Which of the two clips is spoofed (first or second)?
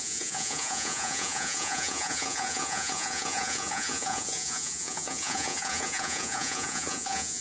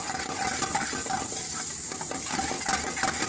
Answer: first